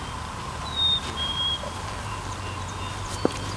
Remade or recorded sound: recorded